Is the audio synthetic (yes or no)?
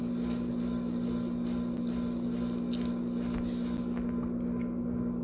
no